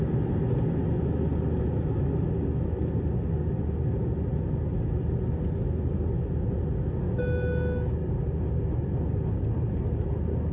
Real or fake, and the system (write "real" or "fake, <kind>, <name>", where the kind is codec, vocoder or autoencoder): real